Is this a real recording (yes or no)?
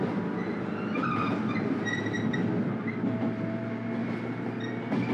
yes